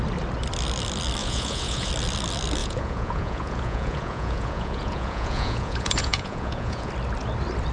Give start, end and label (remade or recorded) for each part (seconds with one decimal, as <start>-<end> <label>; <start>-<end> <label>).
0.0-1.2 recorded; 1.2-1.9 remade; 1.9-2.6 recorded; 2.6-6.9 remade; 6.9-7.7 recorded